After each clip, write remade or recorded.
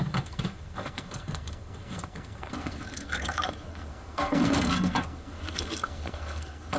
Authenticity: remade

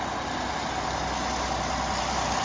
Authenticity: recorded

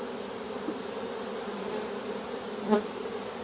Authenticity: recorded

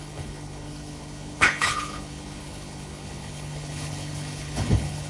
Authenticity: remade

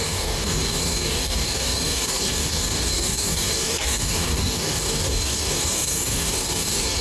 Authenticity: remade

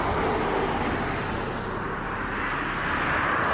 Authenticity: recorded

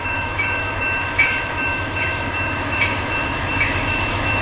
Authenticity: remade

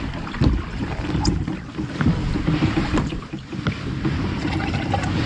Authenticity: recorded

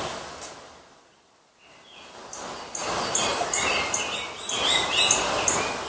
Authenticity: recorded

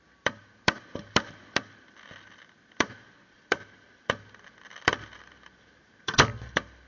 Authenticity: remade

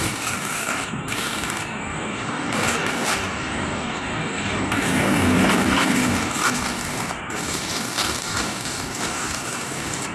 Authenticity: remade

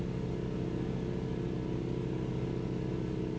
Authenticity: recorded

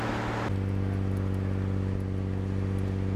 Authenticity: recorded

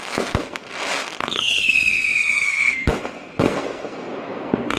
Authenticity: remade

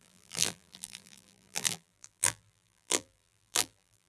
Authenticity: remade